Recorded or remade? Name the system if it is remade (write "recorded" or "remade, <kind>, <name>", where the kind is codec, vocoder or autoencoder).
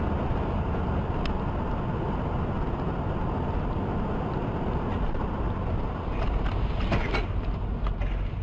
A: recorded